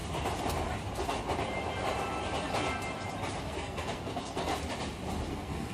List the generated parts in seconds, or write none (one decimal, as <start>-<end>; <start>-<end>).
3.4-4.5; 5.3-5.7